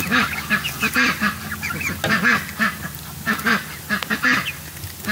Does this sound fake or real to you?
real